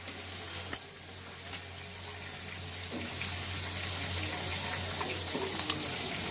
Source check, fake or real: real